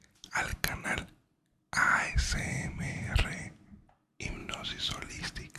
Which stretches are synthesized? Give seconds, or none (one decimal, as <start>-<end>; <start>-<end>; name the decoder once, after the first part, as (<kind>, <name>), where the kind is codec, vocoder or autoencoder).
4.4-5.1 (autoencoder, DAC-VAE)